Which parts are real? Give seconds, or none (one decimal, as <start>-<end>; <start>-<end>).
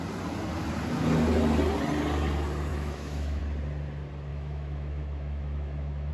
0.0-2.7; 3.4-4.3